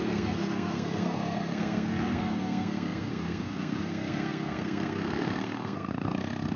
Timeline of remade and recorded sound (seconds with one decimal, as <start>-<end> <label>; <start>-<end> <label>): 0.0-6.6 remade